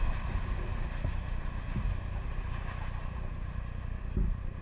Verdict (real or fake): real